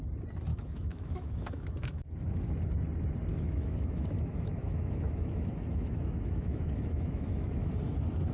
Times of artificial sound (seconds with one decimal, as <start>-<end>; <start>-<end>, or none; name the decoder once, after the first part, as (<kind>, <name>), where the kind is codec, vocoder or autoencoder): 0.5-2.5 (autoencoder, DAC-VAE); 3.3-7.7